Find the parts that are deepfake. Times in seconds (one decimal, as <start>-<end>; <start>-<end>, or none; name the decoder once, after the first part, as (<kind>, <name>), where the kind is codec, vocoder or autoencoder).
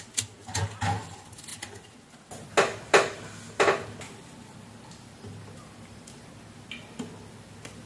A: none